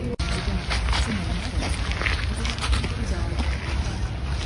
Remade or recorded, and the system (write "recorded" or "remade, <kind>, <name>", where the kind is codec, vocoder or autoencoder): recorded